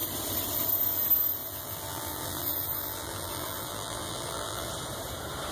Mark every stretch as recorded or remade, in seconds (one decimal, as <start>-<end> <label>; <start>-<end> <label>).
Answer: 0.0-1.4 recorded; 1.4-4.7 remade; 4.7-5.5 recorded